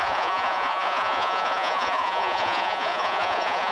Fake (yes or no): yes